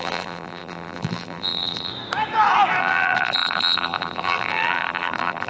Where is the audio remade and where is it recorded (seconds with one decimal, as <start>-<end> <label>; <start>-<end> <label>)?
0.0-1.9 remade; 1.9-2.8 recorded; 2.8-5.5 remade